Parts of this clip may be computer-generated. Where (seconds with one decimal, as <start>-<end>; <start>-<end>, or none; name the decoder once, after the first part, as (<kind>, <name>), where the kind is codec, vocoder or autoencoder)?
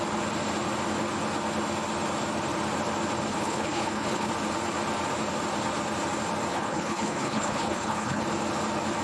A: 3.3-4.3 (codec, HILCodec); 6.5-8.2